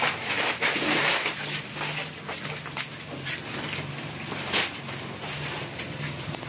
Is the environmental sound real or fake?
real